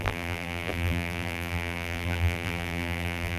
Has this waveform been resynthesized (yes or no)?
yes